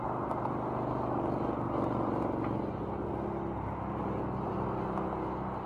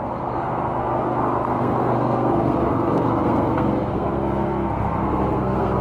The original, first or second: first